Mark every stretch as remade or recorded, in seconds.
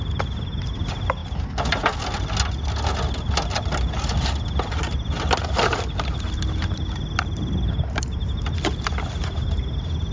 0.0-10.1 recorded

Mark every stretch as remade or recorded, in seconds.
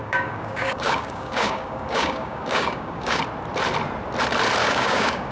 0.0-3.2 remade; 3.2-4.6 recorded; 4.6-5.3 remade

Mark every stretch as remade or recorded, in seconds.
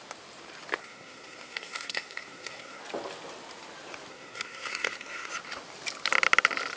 0.0-0.8 recorded; 0.8-2.8 remade; 2.8-4.1 recorded; 4.1-5.3 remade; 5.3-6.8 recorded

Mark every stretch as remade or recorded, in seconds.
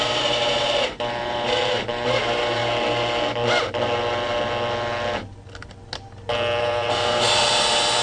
0.0-2.6 remade; 2.6-6.6 recorded; 6.6-8.0 remade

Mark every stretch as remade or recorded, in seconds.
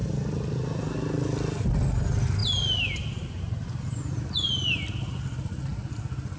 0.0-6.4 recorded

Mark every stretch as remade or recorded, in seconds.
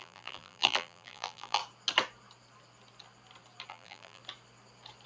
0.0-1.6 remade; 1.6-3.7 recorded; 3.7-4.2 remade; 4.2-5.1 recorded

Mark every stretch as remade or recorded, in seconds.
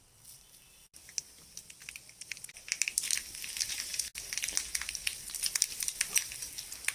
0.0-6.9 recorded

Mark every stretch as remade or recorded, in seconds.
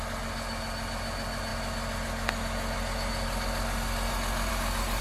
0.0-5.0 recorded